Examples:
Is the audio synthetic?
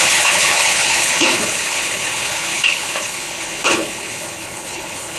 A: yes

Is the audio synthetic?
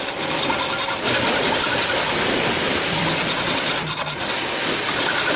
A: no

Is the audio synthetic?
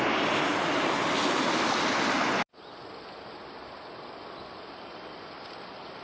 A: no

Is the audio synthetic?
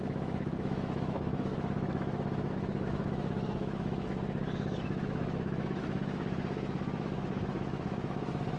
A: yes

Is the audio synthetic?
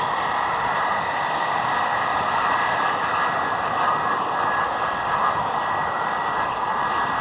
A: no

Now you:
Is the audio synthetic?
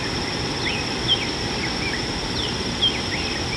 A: no